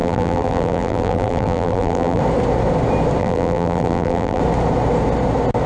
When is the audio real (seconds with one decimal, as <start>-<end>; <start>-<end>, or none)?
2.2-3.2; 4.4-5.7